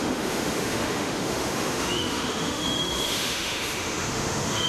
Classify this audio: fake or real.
fake